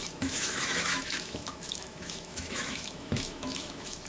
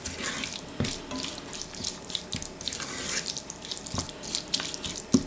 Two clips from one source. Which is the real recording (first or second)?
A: second